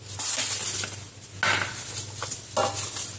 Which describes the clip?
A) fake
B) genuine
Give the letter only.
B